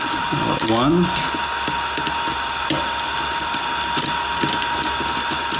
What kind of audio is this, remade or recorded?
recorded